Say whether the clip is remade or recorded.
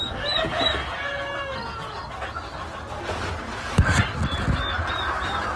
recorded